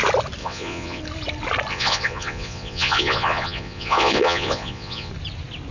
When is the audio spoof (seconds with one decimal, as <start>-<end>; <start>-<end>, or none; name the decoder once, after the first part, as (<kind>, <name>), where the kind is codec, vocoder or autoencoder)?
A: 0.4-1.0 (vocoder, Vocos); 1.7-5.1